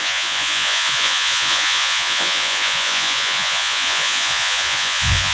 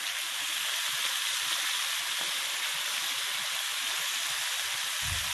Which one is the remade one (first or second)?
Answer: first